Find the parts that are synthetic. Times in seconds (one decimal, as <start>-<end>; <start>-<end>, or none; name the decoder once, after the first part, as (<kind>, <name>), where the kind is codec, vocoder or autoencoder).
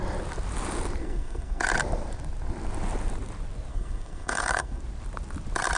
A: 1.0-1.6 (codec, SNAC); 3.7-4.8